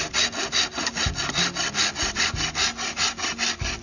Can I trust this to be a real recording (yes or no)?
yes